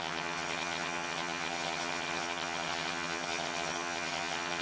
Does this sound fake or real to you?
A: fake